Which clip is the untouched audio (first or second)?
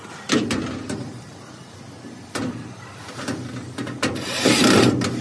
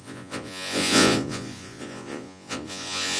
first